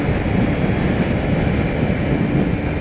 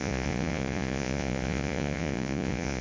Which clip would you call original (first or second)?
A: first